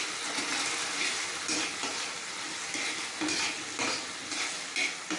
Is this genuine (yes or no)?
yes